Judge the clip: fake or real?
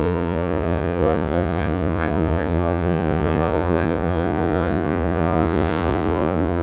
fake